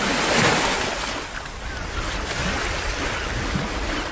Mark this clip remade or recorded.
recorded